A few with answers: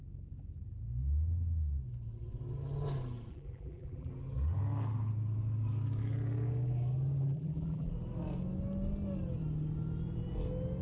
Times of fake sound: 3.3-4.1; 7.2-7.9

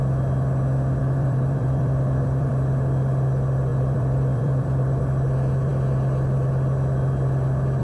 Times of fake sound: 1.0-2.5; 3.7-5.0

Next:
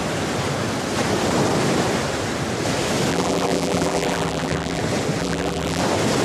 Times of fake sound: 3.1-4.8; 5.2-5.8